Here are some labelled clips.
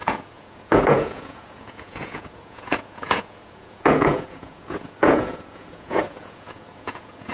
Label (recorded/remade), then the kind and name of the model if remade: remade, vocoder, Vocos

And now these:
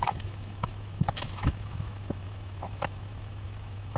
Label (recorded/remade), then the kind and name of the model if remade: remade, autoencoder, DAC-VAE